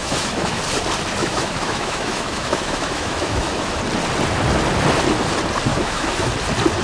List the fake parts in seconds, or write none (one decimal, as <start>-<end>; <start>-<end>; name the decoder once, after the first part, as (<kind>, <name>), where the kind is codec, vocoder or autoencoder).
0.0-0.6 (autoencoder, DAC-VAE); 1.2-3.8; 5.7-6.3